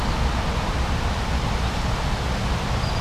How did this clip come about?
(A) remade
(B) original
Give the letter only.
B